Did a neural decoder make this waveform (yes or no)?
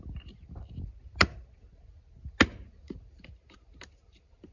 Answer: no